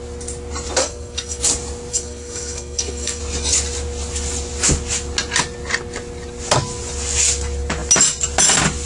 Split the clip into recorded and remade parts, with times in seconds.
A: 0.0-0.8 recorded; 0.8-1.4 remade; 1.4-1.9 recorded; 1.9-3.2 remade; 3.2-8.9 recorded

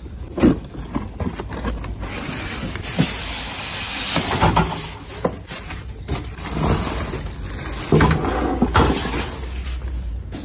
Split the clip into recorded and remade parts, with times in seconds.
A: 0.0-10.4 recorded

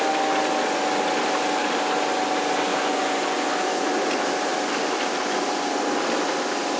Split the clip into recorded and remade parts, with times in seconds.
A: 0.0-2.7 recorded; 2.7-3.9 remade; 3.9-6.8 recorded

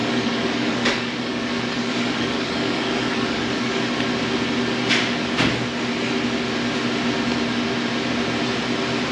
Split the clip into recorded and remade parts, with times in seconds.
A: 0.0-3.8 remade; 3.8-9.1 recorded

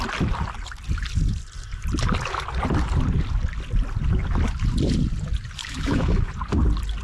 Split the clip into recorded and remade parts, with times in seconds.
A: 0.0-5.6 recorded; 5.6-6.3 remade; 6.3-7.0 recorded

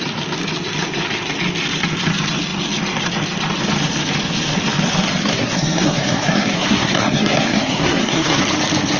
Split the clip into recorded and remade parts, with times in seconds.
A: 0.0-5.2 recorded; 5.2-8.4 remade; 8.4-9.0 recorded

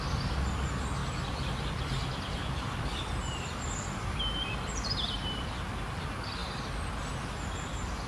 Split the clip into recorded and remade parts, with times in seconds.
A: 0.0-1.0 recorded; 1.0-5.6 remade; 5.6-8.1 recorded

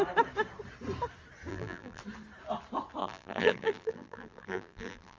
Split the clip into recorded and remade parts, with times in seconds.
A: 0.0-1.5 recorded; 1.5-2.0 remade; 2.0-3.0 recorded; 3.0-5.2 remade